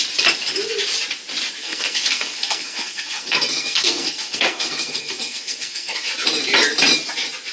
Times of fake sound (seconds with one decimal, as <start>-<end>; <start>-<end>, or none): 1.6-6.1